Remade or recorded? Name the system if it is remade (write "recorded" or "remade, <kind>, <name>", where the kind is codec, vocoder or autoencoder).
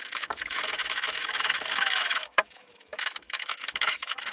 remade, autoencoder, DAC-VAE